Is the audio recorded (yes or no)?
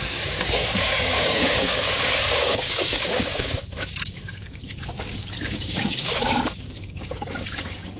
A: no